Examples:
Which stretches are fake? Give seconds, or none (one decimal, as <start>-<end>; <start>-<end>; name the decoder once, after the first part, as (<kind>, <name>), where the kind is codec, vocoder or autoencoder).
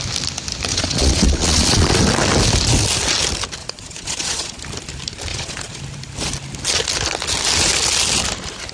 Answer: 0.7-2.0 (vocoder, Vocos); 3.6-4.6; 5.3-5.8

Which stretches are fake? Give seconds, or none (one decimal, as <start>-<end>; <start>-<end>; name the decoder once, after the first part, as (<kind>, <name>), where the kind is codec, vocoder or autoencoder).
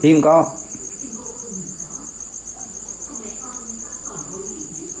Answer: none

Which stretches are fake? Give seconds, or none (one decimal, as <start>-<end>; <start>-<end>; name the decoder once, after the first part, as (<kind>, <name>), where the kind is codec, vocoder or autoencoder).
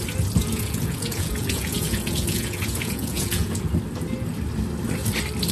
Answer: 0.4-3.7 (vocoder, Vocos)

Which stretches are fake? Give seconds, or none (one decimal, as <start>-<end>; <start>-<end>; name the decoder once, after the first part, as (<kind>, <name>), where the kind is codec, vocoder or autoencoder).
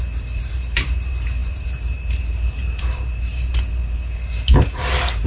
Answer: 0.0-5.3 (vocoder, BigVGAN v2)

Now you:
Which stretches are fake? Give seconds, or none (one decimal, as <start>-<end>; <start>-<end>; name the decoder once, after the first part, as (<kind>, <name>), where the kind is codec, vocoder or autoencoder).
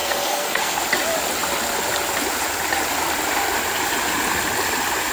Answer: 0.0-0.8 (codec, SNAC)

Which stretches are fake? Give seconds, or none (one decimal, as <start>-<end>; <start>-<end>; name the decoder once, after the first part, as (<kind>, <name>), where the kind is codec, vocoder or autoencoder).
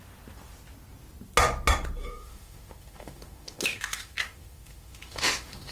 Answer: 2.0-5.7 (autoencoder, DAC-VAE)